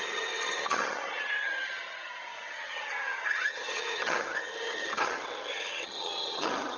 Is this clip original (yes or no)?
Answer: no